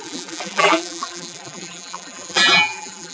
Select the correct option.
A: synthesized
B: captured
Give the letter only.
A